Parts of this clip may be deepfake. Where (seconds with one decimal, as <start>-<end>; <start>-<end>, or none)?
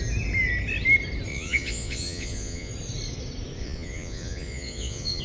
1.3-2.7; 3.6-5.2